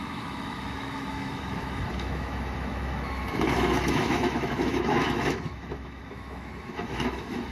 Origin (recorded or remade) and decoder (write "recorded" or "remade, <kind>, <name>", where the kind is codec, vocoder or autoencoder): remade, autoencoder, DAC-VAE